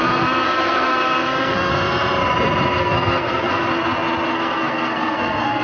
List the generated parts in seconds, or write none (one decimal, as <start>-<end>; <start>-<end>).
0.0-1.7; 2.8-3.7; 4.3-5.6